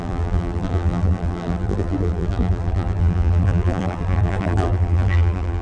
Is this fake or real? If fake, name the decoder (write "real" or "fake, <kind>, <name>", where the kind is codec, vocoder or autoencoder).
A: fake, vocoder, BigVGAN v2